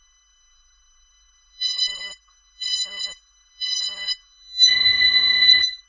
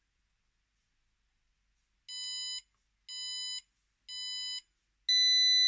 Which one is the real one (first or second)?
second